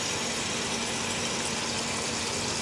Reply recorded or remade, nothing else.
recorded